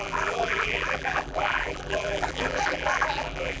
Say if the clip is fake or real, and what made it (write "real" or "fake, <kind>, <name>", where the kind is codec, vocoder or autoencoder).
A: fake, vocoder, BigVGAN v2